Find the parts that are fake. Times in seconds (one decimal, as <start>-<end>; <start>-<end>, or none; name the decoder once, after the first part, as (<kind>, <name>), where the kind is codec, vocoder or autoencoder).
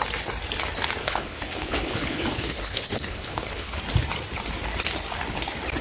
1.0-3.8 (codec, HILCodec)